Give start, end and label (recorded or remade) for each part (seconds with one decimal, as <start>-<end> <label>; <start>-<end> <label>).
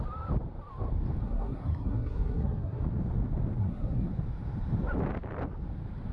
0.0-1.2 recorded; 1.2-2.8 remade; 2.8-3.6 recorded; 3.6-4.1 remade; 4.1-6.1 recorded